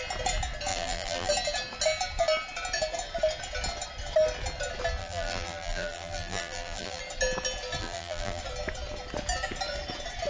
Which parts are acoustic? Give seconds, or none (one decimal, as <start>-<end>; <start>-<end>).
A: 0.0-0.7; 1.3-5.0; 7.0-7.8; 8.4-10.3